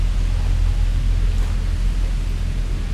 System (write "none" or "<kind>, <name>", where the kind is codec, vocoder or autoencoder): none